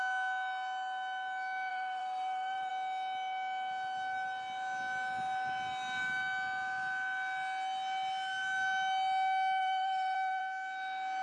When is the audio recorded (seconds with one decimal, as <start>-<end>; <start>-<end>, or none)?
0.0-1.7; 2.7-9.6; 10.4-11.2